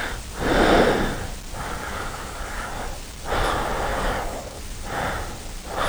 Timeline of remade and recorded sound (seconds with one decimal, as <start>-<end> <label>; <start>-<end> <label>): 0.0-1.8 recorded; 1.8-2.9 remade; 2.9-3.9 recorded; 3.9-4.6 remade; 4.6-5.9 recorded